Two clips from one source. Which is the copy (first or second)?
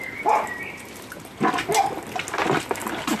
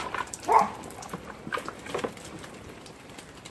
second